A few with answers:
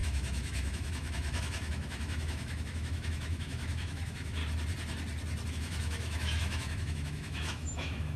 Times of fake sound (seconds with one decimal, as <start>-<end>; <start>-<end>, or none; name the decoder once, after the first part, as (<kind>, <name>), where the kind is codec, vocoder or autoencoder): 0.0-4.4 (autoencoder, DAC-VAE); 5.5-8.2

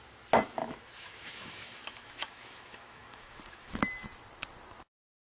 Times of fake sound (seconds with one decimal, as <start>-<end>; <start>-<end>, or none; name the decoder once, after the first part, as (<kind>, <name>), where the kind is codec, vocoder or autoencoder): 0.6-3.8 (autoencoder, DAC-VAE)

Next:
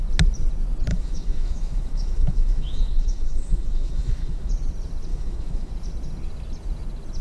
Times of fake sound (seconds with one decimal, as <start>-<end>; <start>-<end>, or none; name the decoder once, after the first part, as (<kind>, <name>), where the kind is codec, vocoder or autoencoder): 0.9-4.5 (autoencoder, DAC-VAE); 5.1-5.7